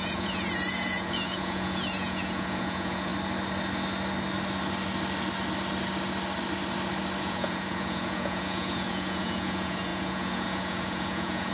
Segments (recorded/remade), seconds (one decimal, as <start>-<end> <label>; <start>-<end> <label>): 0.0-3.1 remade; 3.1-7.2 recorded; 7.2-11.5 remade

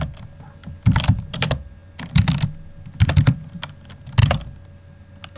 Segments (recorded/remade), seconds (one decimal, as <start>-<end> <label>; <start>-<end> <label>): 0.0-5.4 recorded